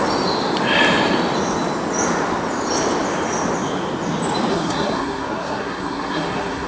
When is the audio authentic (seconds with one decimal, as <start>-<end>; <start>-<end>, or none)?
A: 0.0-4.5